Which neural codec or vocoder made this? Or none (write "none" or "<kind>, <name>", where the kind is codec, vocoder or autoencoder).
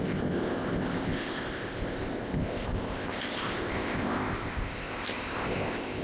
codec, ZipCodec